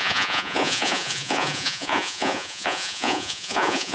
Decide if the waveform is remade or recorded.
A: remade